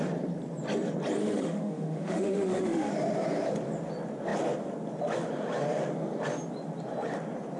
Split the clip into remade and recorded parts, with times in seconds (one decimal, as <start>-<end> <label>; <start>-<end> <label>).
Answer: 0.0-1.2 recorded; 1.2-2.9 remade; 2.9-7.6 recorded